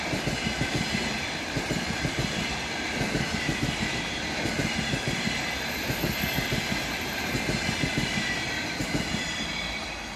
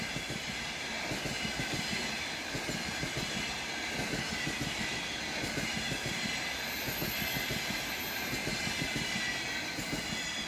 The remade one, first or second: first